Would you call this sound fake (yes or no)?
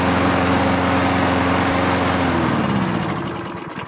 no